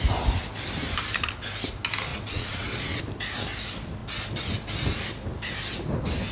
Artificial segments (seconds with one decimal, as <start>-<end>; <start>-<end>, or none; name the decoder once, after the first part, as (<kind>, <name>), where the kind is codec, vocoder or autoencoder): 2.1-3.0 (vocoder, WaveNeXt)